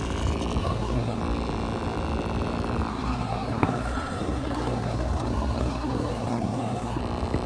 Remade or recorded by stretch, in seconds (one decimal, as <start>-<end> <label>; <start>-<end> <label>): 0.0-0.6 recorded; 0.6-1.2 remade; 1.2-2.9 recorded; 2.9-7.0 remade; 7.0-7.5 recorded